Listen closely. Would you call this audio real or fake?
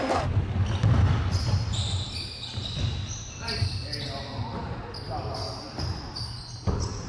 real